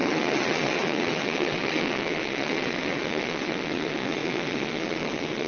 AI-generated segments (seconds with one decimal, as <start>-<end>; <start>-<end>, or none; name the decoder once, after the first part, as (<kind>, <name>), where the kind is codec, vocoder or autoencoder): 0.0-5.5 (vocoder, WaveNeXt)